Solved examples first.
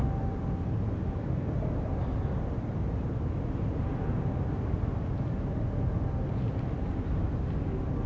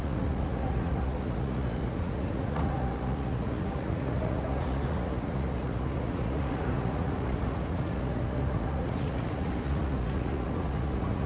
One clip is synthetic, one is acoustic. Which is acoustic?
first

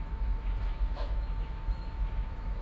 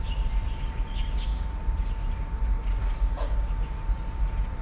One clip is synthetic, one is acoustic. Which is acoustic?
second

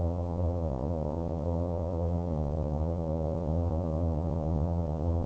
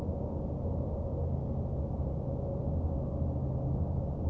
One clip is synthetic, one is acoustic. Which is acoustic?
second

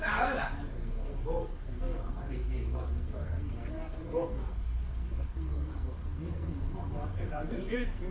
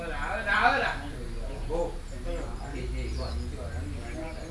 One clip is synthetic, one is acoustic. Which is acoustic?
second